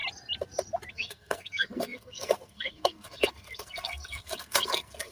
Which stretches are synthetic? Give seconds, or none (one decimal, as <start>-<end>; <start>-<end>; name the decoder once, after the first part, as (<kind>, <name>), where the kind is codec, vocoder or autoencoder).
0.9-5.1 (codec, SNAC)